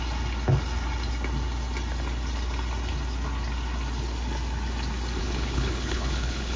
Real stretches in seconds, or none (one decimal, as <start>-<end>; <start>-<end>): 0.0-5.2